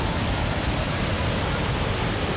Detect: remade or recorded recorded